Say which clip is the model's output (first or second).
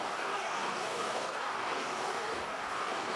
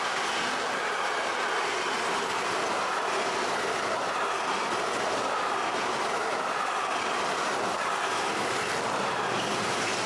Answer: first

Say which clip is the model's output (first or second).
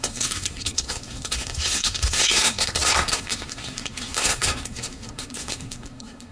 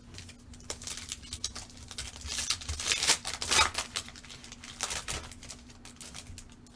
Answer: first